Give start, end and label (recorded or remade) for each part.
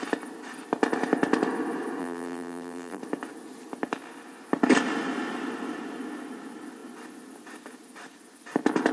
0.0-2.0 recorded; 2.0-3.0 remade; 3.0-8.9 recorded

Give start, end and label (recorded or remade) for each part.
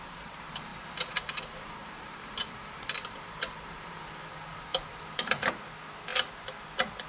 0.0-0.7 recorded; 0.7-4.2 remade; 4.2-4.7 recorded; 4.7-5.6 remade; 5.6-7.1 recorded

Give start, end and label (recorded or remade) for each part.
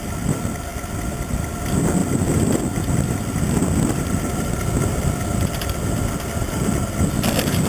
0.0-7.7 recorded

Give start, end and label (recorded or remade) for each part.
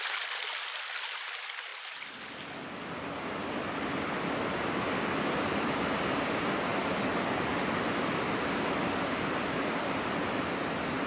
0.0-11.1 recorded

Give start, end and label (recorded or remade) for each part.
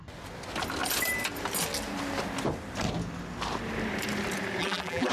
0.0-4.6 recorded; 4.6-5.1 remade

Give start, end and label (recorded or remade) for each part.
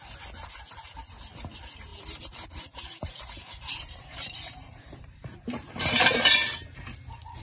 0.0-1.9 recorded; 1.9-6.3 remade; 6.3-7.4 recorded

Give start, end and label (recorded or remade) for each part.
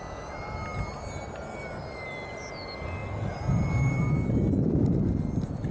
0.0-5.7 recorded